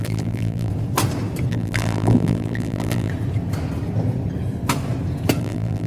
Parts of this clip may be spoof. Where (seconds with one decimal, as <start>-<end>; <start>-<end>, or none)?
0.0-0.7; 1.5-3.1; 5.4-5.9